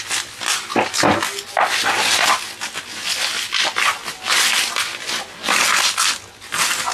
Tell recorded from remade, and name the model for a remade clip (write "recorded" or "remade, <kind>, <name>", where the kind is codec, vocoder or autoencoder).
recorded